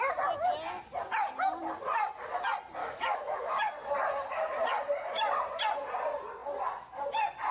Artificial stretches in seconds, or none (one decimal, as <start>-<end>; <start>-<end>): 2.8-3.6